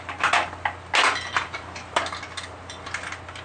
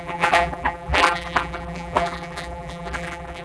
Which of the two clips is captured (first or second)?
first